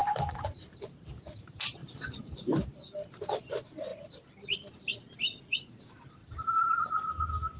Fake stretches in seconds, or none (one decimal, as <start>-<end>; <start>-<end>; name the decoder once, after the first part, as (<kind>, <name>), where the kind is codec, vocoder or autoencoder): 0.0-0.7 (vocoder, BigVGAN v2); 1.8-2.5; 6.2-6.8